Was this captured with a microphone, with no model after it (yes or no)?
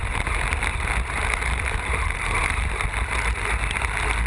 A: yes